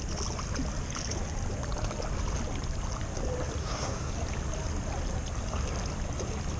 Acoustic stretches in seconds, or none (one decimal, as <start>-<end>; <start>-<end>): 0.0-3.6; 4.1-6.6